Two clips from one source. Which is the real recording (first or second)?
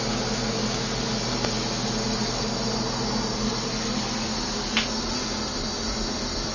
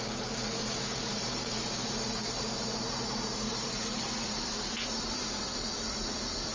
first